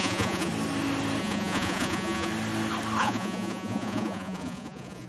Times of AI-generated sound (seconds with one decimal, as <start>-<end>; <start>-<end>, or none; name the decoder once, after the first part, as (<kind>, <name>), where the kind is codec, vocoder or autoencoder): 0.0-0.5 (vocoder, Vocos); 1.2-2.3; 3.0-5.1